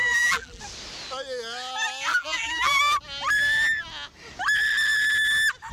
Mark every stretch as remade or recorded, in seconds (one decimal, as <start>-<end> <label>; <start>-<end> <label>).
0.0-0.6 remade; 0.6-2.1 recorded; 2.1-2.8 remade; 2.8-5.7 recorded